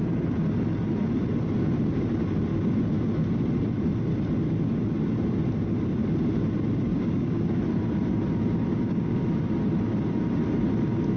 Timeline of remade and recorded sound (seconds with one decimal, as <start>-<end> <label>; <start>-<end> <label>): 0.0-6.9 recorded; 6.9-7.6 remade; 7.6-8.7 recorded; 8.7-9.2 remade; 9.2-11.2 recorded